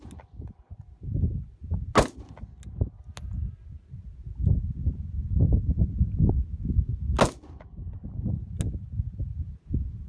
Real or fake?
real